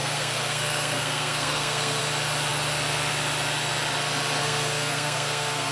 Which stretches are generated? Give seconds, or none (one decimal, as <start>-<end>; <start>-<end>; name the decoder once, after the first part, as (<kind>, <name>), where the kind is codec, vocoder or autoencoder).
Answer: 0.0-2.0 (codec, SNAC); 4.4-5.7